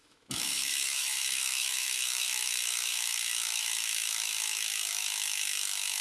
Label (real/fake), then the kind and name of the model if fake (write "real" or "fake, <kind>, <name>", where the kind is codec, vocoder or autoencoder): fake, autoencoder, DAC-VAE